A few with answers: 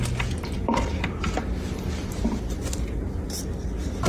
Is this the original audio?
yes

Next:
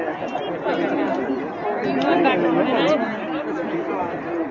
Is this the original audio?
yes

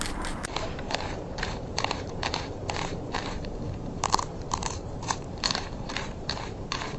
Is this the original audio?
no